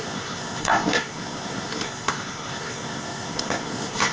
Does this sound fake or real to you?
fake